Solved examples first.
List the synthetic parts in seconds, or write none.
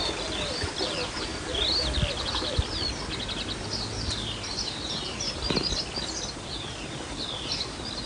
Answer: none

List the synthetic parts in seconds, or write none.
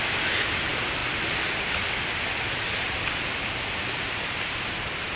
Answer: 0.0-1.0 (vocoder, BigVGAN v2); 4.1-5.2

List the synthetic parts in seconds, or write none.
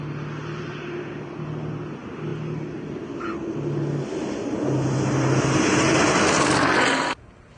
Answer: none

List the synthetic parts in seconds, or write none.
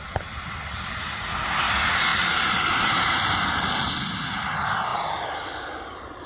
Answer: 2.1-4.3 (vocoder, BigVGAN v2); 4.9-6.3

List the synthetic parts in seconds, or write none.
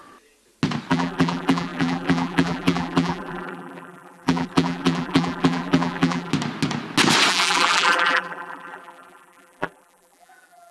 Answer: 0.9-6.3 (vocoder, BigVGAN v2); 7.3-10.7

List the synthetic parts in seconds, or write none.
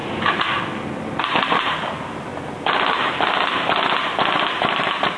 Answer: 1.2-2.3 (vocoder, BigVGAN v2); 4.5-5.2